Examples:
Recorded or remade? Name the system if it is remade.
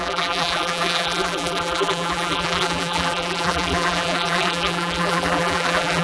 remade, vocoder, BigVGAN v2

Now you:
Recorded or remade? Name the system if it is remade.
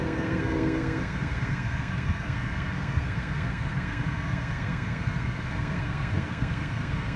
remade, codec, SNAC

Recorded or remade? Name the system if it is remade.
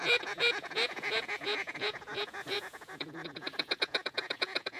remade, vocoder, Vocos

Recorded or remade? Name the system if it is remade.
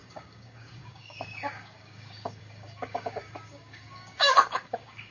remade, codec, DAC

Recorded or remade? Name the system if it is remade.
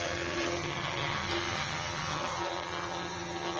remade, vocoder, HiFi-GAN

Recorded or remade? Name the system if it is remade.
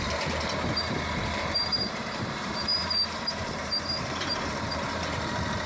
remade, vocoder, BigVGAN v2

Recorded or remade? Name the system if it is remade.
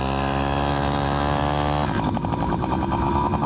recorded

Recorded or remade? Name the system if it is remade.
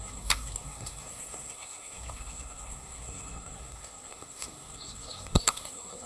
remade, codec, SNAC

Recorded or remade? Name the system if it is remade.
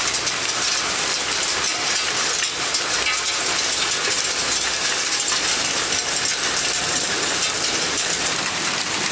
remade, vocoder, BigVGAN v2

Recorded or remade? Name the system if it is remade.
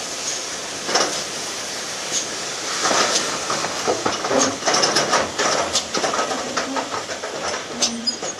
recorded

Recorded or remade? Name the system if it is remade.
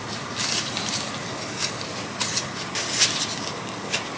recorded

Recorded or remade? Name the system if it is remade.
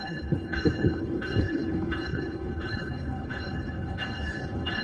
remade, codec, HILCodec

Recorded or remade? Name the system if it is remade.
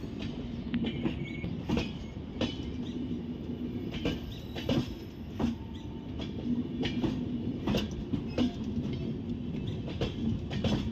recorded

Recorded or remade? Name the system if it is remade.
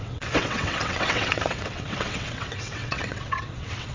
remade, vocoder, WaveNeXt